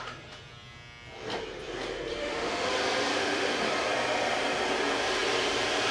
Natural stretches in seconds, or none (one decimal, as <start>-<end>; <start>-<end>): 0.0-2.1; 2.7-3.1; 3.6-5.9